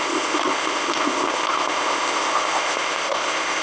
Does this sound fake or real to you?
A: fake